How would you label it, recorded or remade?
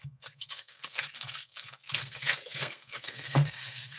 remade